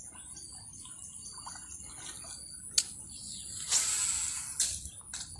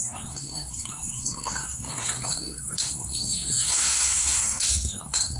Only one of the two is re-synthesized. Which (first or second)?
second